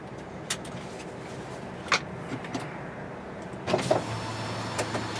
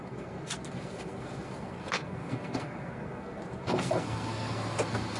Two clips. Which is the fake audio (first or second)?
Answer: second